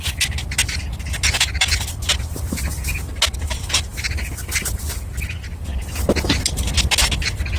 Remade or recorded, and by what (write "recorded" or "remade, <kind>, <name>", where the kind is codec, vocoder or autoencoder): recorded